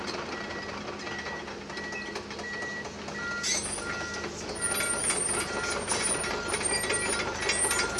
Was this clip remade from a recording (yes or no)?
no